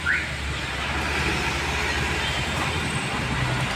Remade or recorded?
recorded